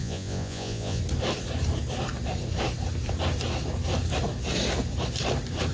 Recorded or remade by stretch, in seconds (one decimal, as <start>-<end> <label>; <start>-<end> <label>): 0.0-1.0 remade; 1.0-5.7 recorded